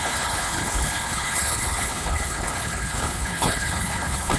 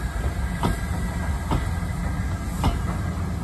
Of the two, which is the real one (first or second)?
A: second